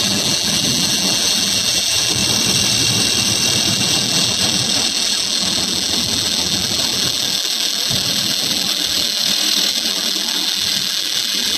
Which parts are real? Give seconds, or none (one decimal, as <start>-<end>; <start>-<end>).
2.2-3.7; 9.2-9.7